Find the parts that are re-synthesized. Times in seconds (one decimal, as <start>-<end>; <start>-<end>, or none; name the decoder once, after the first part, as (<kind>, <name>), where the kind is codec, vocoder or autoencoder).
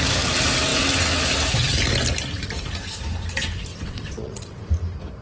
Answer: 3.7-4.7 (vocoder, WaveNeXt)